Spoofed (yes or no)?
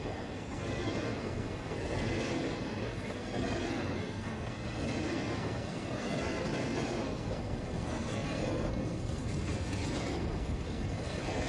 yes